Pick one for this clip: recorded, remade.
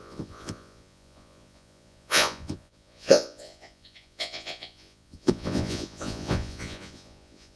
remade